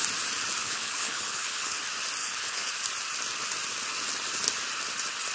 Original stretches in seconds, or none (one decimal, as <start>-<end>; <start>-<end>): 0.0-0.6; 1.8-2.2; 2.7-5.3